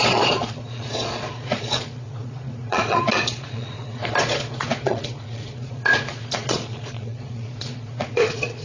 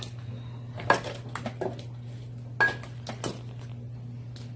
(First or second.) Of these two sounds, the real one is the second